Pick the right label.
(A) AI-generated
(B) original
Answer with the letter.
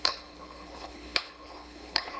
A